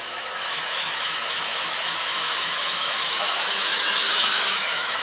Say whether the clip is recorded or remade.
remade